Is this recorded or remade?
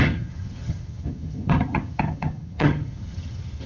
remade